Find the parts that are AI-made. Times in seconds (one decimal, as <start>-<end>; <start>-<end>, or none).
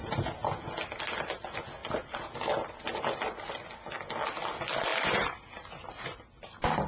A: 1.8-3.7; 4.9-5.5